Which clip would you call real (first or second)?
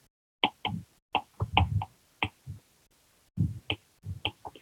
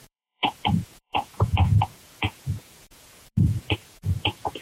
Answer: first